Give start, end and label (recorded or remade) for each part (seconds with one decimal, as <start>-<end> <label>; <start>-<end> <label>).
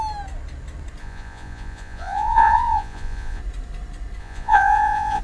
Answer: 0.0-1.0 recorded; 1.0-3.4 remade; 3.4-4.2 recorded; 4.2-5.2 remade